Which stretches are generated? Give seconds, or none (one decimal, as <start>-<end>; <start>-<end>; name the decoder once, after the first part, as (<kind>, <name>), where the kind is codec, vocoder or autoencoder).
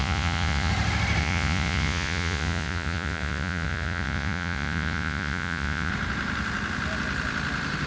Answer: 0.0-0.7 (vocoder, Vocos); 1.2-5.9